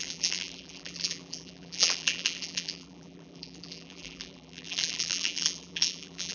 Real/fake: fake